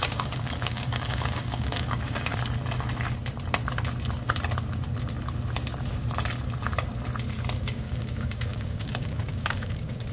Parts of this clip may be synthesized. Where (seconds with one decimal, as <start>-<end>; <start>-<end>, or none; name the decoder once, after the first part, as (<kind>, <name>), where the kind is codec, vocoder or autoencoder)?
0.0-2.3 (codec, DAC); 7.6-10.1